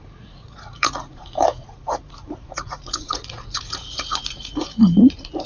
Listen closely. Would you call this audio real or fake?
fake